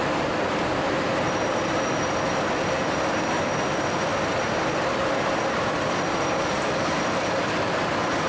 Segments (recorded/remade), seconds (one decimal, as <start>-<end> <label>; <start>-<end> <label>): 0.0-8.3 recorded